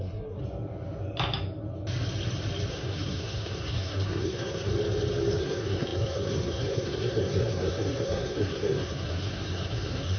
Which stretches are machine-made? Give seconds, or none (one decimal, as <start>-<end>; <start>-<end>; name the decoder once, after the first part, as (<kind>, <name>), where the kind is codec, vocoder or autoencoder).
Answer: 0.0-0.4 (codec, SNAC); 2.7-4.7; 5.4-10.2